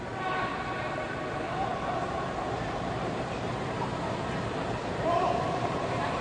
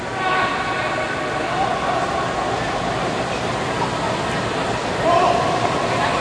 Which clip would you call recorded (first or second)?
second